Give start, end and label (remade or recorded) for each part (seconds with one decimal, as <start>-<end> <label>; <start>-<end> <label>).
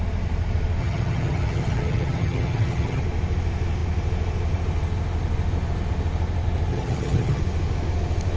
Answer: 0.0-0.8 recorded; 0.8-3.0 remade; 3.0-6.7 recorded; 6.7-7.4 remade; 7.4-8.4 recorded